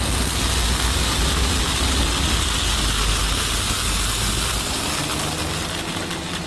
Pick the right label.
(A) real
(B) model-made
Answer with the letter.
A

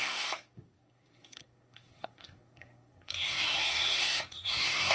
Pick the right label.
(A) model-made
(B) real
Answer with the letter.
A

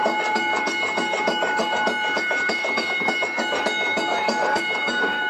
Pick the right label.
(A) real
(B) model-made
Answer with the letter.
B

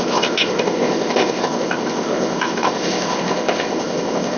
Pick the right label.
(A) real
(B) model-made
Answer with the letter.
B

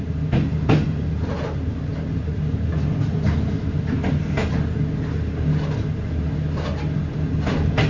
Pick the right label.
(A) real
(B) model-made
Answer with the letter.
A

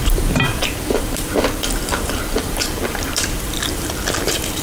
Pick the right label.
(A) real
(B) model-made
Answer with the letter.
B